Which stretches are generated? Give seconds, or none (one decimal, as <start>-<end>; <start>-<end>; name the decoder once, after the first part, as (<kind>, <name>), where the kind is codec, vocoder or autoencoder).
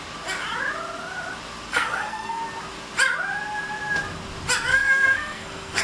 1.7-2.4 (codec, SNAC); 4.7-5.8